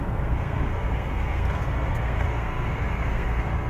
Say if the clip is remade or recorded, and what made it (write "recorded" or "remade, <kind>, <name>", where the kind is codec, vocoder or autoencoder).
remade, codec, SNAC